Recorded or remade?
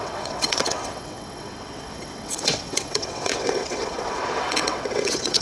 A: remade